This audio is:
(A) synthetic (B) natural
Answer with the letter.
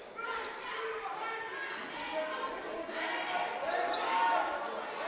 B